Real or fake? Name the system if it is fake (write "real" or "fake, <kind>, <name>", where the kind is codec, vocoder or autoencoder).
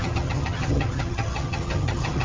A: fake, vocoder, HiFi-GAN